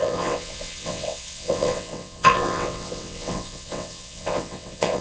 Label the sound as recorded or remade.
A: remade